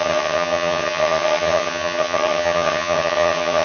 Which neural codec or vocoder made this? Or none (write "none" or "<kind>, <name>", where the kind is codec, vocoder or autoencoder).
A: vocoder, HiFi-GAN